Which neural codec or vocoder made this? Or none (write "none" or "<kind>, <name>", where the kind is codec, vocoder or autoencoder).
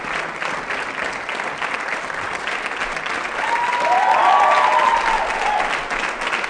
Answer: none